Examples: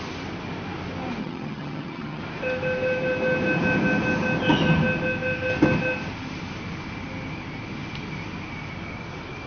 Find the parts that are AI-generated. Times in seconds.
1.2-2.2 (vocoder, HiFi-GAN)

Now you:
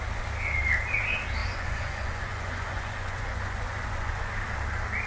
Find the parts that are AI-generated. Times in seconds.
1.4-4.3 (vocoder, Vocos)

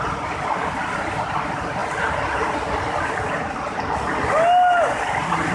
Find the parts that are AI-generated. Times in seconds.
0.0-1.8 (vocoder, BigVGAN v2); 5.1-5.5

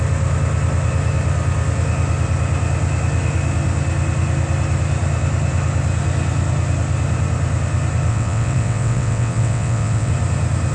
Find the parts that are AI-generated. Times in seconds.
8.1-10.1 (vocoder, WaveNeXt)

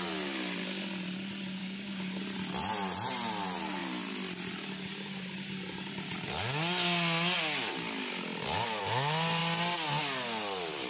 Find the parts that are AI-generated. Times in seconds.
1.6-2.2 (codec, DAC)